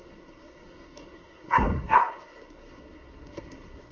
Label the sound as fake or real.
fake